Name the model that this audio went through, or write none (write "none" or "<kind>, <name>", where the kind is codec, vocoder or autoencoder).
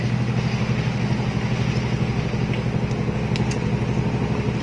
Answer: none